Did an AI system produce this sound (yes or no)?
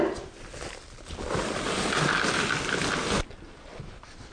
no